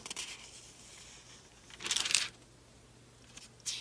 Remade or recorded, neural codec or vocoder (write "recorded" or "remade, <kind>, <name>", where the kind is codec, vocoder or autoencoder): recorded